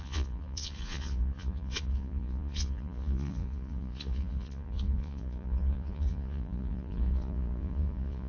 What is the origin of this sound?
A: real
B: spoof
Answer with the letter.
B